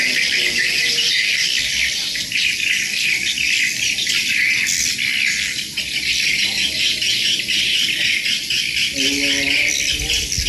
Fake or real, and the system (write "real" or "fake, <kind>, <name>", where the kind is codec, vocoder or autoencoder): real